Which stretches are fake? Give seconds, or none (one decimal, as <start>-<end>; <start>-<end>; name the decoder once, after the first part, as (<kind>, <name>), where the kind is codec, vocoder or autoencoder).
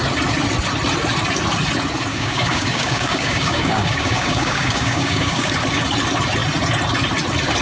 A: 2.1-5.5 (codec, DAC)